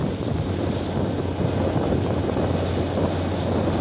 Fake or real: real